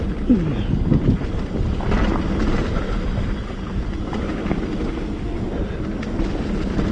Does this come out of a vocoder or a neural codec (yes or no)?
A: no